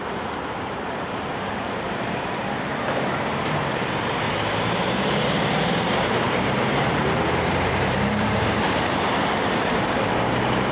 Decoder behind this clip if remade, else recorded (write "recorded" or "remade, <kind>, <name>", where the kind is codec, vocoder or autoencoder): remade, vocoder, BigVGAN v2